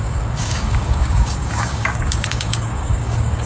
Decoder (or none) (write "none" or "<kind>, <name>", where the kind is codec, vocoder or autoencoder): codec, DAC